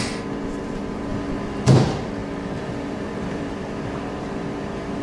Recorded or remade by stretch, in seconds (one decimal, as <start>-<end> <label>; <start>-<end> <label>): 0.0-5.0 remade